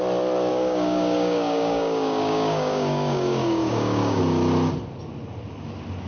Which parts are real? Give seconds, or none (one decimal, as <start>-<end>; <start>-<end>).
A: 0.0-0.5; 4.2-6.1